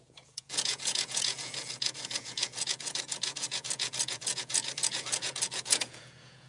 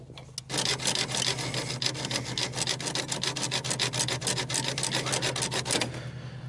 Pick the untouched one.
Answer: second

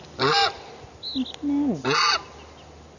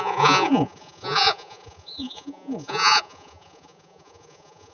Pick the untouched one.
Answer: first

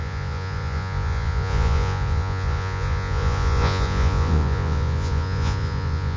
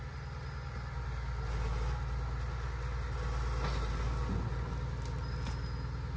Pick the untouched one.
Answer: second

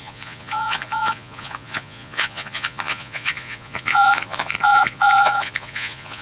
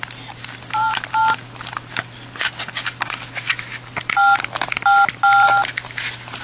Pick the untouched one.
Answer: second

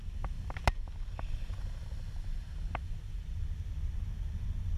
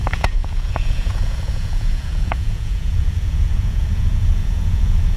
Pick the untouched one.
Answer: first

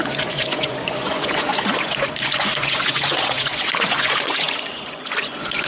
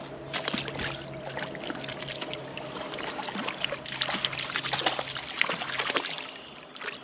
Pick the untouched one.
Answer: second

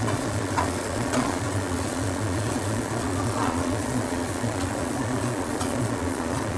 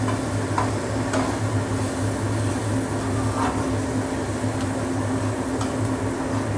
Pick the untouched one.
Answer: second